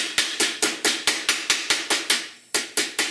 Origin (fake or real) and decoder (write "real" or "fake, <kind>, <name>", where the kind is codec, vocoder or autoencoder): real